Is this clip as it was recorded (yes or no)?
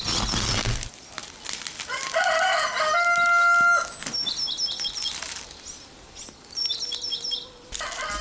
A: yes